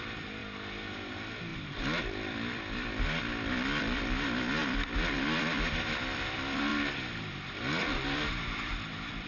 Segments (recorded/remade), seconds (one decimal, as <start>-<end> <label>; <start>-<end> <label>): 0.0-0.4 remade; 0.4-1.1 recorded; 1.1-6.7 remade; 6.7-7.8 recorded; 7.8-9.3 remade